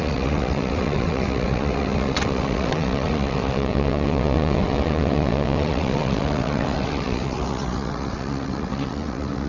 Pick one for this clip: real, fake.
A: fake